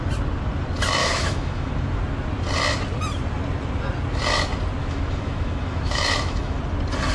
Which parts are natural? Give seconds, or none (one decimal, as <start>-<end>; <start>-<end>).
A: 0.0-1.0; 1.7-4.8; 6.6-7.1